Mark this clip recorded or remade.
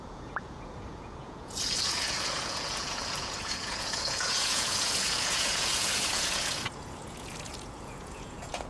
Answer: remade